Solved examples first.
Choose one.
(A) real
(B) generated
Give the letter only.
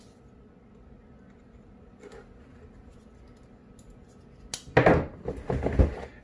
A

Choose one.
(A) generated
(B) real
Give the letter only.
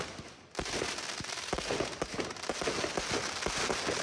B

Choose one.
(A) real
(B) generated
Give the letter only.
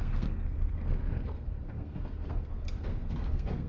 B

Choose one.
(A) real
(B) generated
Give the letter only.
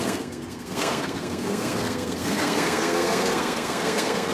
B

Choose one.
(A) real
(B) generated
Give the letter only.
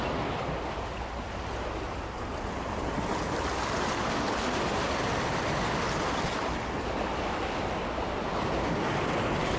A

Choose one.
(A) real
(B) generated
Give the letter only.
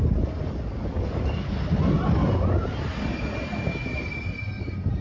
A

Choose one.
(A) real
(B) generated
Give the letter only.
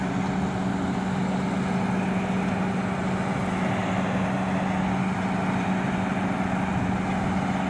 A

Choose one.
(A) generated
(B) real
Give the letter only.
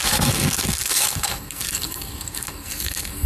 A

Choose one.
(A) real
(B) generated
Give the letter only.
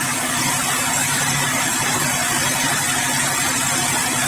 A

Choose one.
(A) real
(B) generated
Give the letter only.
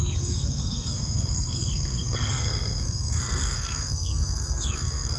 B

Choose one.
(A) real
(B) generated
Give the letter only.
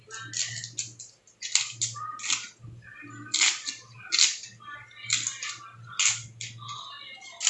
A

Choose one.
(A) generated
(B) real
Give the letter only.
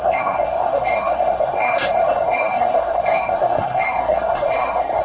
A